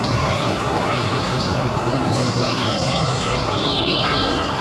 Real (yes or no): no